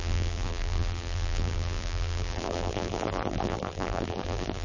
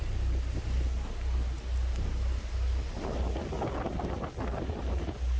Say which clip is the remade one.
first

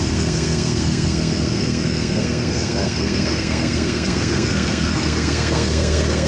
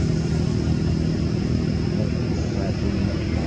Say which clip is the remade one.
first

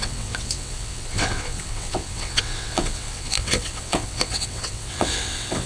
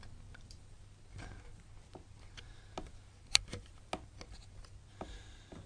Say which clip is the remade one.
first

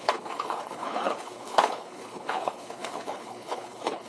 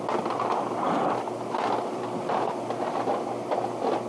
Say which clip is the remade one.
first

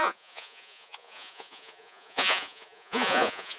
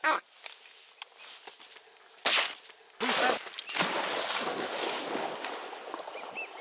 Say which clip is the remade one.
first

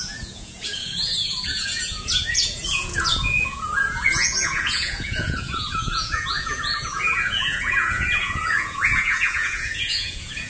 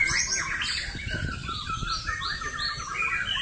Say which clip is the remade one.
first